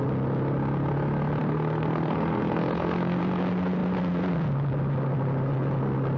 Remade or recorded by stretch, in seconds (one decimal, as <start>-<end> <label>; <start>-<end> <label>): 0.0-1.4 recorded; 1.4-3.2 remade; 3.2-6.2 recorded